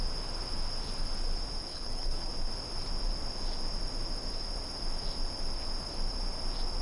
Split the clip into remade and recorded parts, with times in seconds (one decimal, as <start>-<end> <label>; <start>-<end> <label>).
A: 0.0-1.7 recorded; 1.7-2.3 remade; 2.3-6.8 recorded